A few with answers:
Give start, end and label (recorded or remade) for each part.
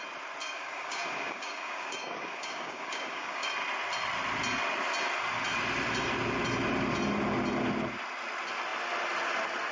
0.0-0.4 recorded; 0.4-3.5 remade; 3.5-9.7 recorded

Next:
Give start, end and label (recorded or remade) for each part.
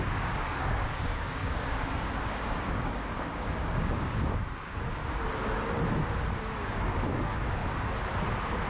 0.0-5.0 remade; 5.0-6.4 recorded; 6.4-7.6 remade; 7.6-8.7 recorded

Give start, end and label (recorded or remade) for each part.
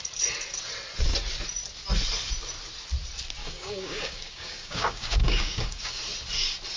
0.0-3.4 recorded; 3.4-6.0 remade; 6.0-6.8 recorded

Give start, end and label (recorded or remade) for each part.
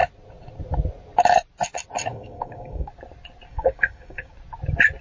0.0-2.1 recorded; 2.1-2.9 remade; 2.9-3.5 recorded; 3.5-4.3 remade; 4.3-5.0 recorded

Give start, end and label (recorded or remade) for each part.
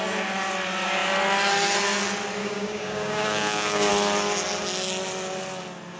0.0-2.4 recorded; 2.4-3.9 remade; 3.9-6.0 recorded